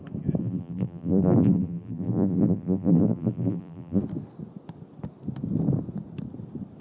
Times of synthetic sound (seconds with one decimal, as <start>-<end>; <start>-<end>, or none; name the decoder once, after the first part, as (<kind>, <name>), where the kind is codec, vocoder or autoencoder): 0.4-4.0 (vocoder, BigVGAN v2)